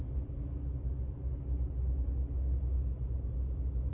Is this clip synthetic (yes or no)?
no